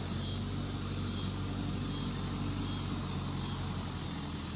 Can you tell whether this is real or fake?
real